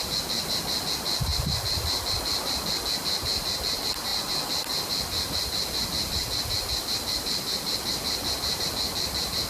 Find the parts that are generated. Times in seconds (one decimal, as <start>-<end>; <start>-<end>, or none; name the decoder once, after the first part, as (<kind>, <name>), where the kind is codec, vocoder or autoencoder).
none